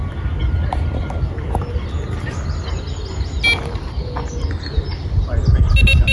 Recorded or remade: recorded